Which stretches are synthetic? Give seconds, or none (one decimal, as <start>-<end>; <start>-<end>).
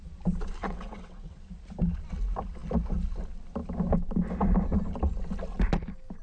0.6-1.4